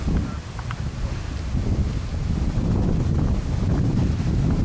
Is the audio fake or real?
real